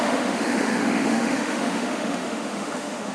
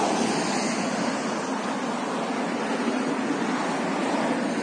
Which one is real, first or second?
second